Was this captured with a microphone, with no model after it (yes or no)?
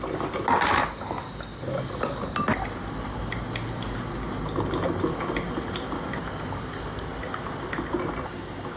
yes